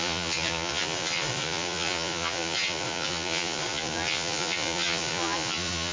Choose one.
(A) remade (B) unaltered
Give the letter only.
A